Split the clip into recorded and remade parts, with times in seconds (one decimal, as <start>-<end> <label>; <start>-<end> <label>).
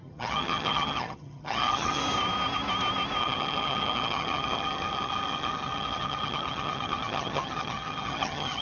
0.0-2.0 remade; 2.0-3.2 recorded; 3.2-8.6 remade